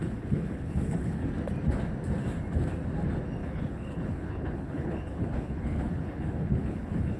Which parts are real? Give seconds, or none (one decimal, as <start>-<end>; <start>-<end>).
1.3-3.4